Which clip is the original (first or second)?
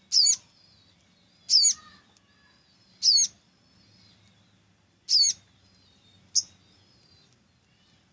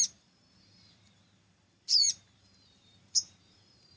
first